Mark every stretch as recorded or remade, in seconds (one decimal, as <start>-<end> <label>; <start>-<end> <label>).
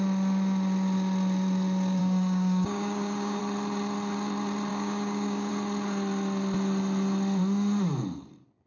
0.0-2.0 recorded; 2.0-3.4 remade; 3.4-4.7 recorded; 4.7-5.5 remade; 5.5-8.7 recorded